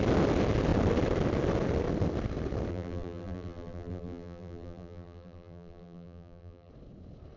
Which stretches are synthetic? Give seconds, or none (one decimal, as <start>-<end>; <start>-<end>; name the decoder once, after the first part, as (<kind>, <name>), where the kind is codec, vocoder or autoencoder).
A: 2.7-6.7 (vocoder, BigVGAN v2)